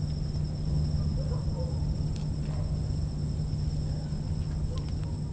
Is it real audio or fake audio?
real